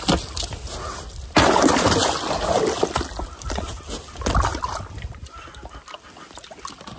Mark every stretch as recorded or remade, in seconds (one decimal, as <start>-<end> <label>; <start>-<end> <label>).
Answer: 0.0-7.0 recorded

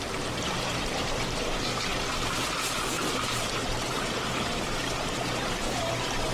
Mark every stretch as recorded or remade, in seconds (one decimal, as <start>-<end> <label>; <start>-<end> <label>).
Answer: 0.0-1.9 remade; 1.9-3.4 recorded; 3.4-6.3 remade

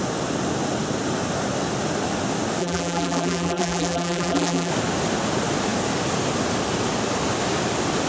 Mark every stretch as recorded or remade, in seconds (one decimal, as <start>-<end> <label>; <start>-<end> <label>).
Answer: 0.0-2.6 recorded; 2.6-4.7 remade; 4.7-8.1 recorded

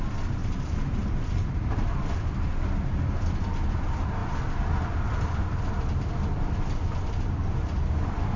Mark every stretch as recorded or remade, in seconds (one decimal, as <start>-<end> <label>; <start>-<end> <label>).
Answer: 0.0-0.4 recorded; 0.4-2.1 remade; 2.1-8.4 recorded

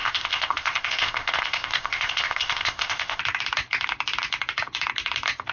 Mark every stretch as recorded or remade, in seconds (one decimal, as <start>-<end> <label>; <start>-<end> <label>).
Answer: 0.0-3.2 remade; 3.2-5.5 recorded

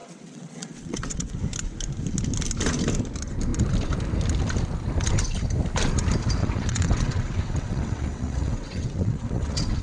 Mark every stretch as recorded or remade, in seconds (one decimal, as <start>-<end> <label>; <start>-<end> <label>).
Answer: 0.0-1.3 remade; 1.3-6.4 recorded; 6.4-9.8 remade